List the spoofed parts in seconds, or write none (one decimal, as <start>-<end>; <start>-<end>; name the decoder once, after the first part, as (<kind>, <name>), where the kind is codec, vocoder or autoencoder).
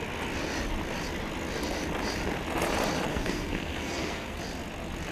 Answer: 3.1-4.4 (codec, SNAC)